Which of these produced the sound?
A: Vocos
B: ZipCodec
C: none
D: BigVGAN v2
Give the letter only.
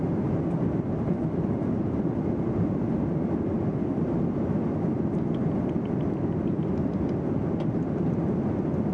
C